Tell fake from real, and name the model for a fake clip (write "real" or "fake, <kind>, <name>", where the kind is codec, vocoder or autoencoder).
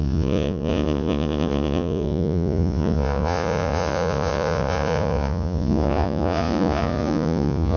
fake, vocoder, Vocos